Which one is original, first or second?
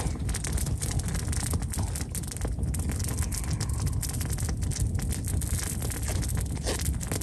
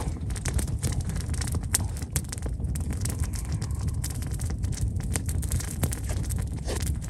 first